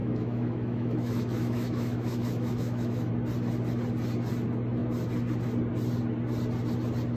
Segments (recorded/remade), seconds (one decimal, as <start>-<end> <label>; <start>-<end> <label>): 0.0-3.1 remade; 3.1-7.2 recorded